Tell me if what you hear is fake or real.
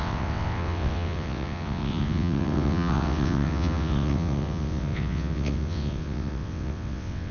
fake